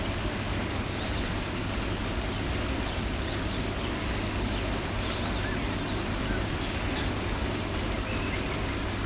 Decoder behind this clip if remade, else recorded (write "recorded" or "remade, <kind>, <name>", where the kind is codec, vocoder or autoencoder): recorded